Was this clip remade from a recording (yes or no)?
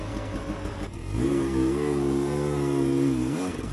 yes